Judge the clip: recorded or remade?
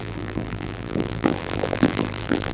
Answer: remade